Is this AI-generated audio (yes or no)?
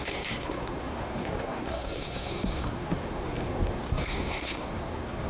yes